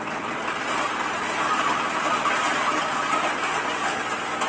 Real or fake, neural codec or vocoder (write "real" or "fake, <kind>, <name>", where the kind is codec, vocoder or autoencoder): real